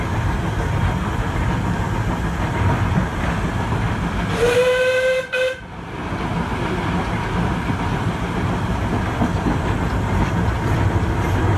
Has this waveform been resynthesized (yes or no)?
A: no